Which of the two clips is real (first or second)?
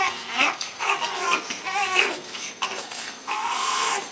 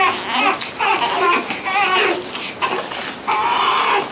second